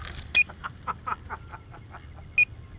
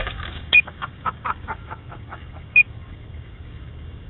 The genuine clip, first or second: first